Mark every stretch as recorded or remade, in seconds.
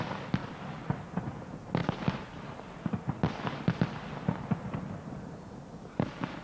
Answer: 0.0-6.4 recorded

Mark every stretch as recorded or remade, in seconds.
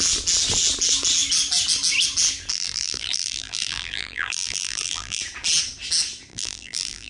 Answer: 0.0-2.5 recorded; 2.5-5.2 remade; 5.2-6.3 recorded; 6.3-7.1 remade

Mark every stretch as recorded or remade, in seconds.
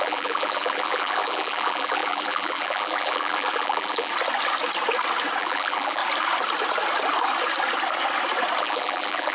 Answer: 0.0-4.1 remade; 4.1-5.4 recorded; 5.4-6.0 remade; 6.0-8.6 recorded; 8.6-9.3 remade